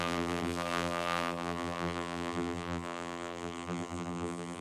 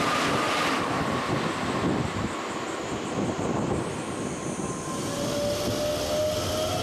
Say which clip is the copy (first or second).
first